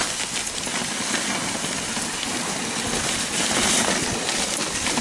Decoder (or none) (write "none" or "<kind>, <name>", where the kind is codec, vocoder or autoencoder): none